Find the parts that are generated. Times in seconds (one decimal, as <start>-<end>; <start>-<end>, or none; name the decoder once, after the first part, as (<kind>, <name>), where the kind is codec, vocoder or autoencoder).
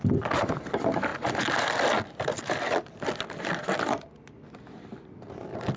none